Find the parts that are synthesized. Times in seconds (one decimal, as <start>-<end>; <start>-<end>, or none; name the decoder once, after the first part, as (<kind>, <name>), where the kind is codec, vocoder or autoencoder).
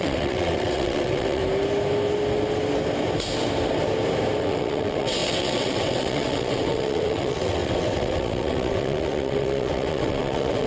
0.0-1.4 (vocoder, WaveNeXt); 4.4-10.7